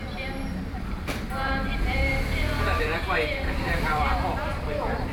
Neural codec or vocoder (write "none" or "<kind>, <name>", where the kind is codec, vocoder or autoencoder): vocoder, BigVGAN v2